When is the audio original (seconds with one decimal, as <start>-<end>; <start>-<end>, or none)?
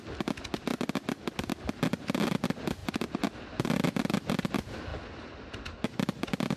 0.0-6.6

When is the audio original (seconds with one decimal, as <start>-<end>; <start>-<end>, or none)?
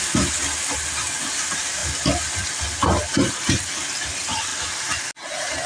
0.0-5.7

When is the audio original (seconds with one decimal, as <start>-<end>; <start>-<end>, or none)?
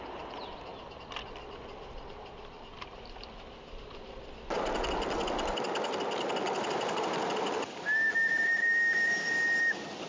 0.0-10.1